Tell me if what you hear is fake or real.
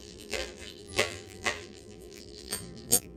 fake